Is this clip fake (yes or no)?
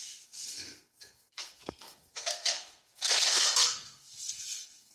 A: yes